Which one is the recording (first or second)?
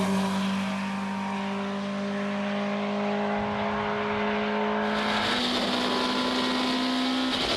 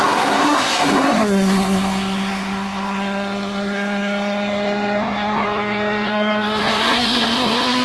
first